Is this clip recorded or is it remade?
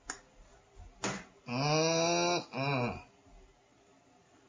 recorded